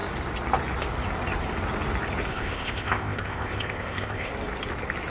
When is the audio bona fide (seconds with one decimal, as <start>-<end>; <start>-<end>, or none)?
0.0-2.3; 4.3-5.1